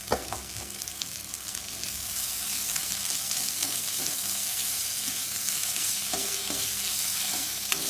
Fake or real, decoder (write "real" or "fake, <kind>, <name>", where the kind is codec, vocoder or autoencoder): fake, codec, SNAC